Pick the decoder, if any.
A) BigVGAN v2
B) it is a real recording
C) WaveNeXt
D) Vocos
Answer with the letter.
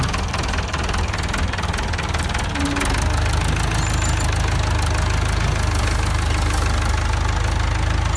B